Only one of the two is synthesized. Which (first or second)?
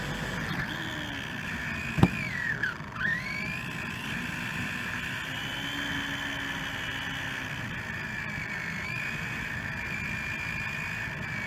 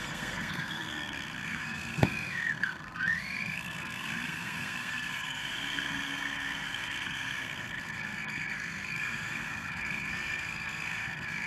second